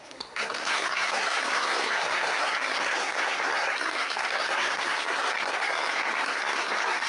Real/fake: fake